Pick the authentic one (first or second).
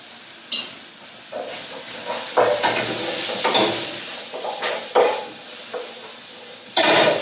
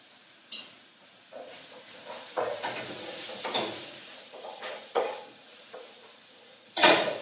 first